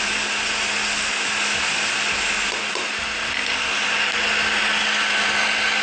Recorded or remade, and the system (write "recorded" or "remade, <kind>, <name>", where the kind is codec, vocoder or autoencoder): recorded